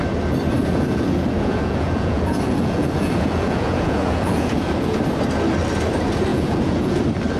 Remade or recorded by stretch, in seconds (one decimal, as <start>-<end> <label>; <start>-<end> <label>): 0.0-0.6 recorded; 0.6-5.0 remade; 5.0-6.3 recorded; 6.3-7.0 remade; 7.0-7.4 recorded